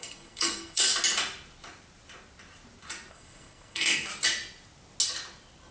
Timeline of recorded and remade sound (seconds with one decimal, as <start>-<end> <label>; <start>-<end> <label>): 0.0-0.9 remade; 0.9-3.1 recorded; 3.1-4.1 remade; 4.1-5.7 recorded